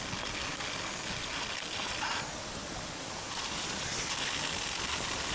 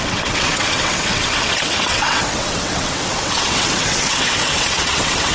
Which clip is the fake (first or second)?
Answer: second